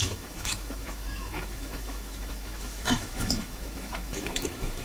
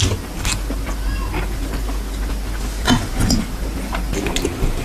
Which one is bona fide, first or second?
second